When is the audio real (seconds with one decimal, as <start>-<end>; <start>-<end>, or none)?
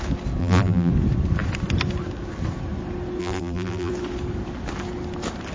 0.0-0.4; 0.9-3.2; 3.9-5.5